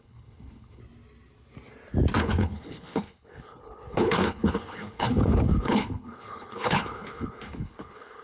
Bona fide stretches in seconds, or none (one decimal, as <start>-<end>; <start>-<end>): 0.8-2.2